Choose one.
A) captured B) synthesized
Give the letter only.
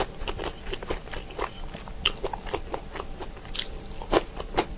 A